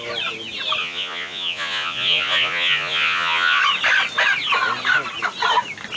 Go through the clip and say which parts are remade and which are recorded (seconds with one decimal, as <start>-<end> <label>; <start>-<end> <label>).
0.0-0.8 recorded; 0.8-3.6 remade; 3.6-6.0 recorded